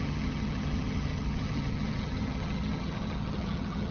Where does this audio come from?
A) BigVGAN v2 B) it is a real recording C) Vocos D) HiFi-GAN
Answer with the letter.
D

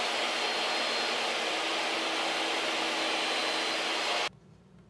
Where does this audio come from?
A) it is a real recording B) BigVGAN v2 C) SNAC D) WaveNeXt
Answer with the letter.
A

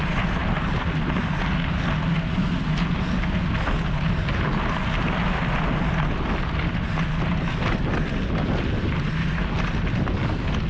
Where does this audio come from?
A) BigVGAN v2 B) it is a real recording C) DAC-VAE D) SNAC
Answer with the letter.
B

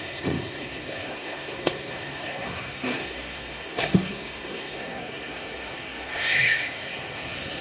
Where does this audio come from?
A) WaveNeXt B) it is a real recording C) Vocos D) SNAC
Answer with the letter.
D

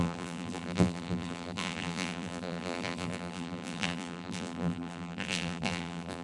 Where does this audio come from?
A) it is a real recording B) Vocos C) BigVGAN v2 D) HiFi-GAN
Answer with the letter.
C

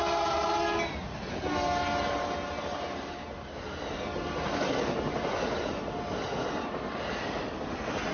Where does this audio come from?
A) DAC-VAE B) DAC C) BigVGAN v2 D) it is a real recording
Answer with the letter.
D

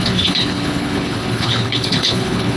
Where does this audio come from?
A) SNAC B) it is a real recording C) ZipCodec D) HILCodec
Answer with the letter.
D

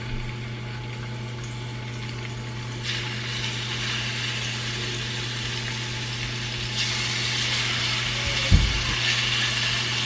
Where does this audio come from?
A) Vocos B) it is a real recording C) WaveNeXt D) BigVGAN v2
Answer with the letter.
B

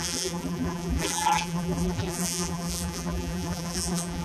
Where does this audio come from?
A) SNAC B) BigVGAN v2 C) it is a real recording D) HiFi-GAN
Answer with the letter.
B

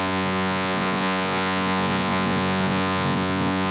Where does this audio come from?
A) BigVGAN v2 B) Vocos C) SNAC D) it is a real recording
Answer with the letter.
B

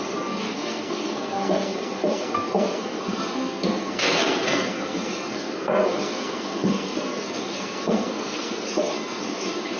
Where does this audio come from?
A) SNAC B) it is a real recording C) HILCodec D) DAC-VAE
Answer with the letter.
A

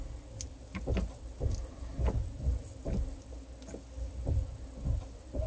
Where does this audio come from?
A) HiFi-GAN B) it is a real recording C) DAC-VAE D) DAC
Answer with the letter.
B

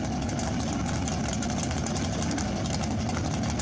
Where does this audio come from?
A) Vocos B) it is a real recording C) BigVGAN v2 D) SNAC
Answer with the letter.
B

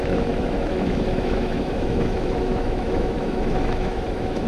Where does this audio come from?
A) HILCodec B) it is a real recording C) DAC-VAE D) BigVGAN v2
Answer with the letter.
C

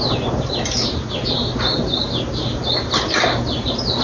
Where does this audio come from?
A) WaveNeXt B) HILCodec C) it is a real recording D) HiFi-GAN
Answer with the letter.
C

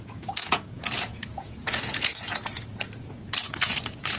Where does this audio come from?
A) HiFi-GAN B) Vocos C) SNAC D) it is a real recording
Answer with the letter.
B